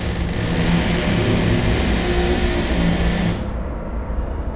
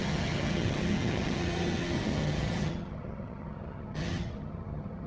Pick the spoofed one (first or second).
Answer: second